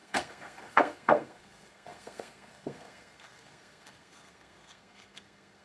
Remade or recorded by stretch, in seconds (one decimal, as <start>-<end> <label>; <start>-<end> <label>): 0.0-5.6 remade